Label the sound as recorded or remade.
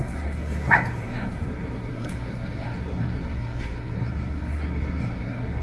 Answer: remade